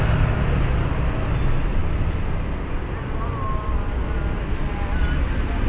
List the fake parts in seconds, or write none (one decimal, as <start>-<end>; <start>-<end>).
none